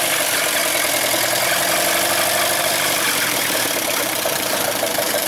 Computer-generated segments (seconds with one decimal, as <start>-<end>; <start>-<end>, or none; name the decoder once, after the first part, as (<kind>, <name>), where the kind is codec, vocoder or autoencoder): 0.0-0.6 (vocoder, BigVGAN v2); 2.6-5.3

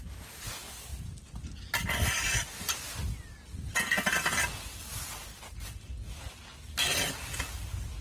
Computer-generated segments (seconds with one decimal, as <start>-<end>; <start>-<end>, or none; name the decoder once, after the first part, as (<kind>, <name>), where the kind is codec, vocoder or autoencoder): none

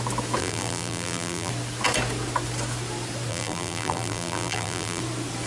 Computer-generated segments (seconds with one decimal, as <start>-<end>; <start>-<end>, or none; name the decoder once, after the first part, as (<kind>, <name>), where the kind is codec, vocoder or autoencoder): 0.4-1.5 (vocoder, BigVGAN v2); 3.3-5.0

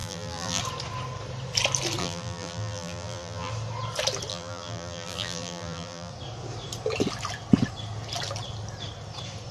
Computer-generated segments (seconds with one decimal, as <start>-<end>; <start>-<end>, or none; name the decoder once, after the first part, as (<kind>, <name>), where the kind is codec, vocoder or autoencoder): 0.0-0.6 (vocoder, BigVGAN v2); 2.0-3.5; 4.3-6.1

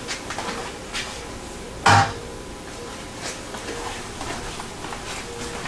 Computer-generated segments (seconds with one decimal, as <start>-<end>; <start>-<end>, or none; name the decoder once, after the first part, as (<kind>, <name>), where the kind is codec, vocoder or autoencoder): 0.6-1.7 (vocoder, BigVGAN v2)